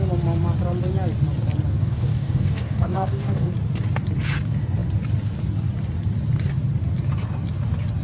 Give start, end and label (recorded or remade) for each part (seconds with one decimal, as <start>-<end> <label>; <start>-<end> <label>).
0.0-1.8 recorded; 1.8-3.5 remade; 3.5-8.0 recorded